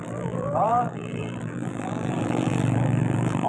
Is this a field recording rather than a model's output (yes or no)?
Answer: no